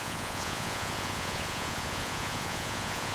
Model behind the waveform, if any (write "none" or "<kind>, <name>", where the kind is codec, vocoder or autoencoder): vocoder, Vocos